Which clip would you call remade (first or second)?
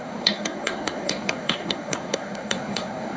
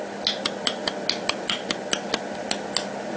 first